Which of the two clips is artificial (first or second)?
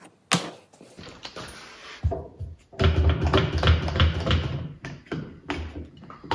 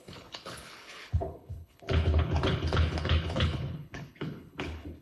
second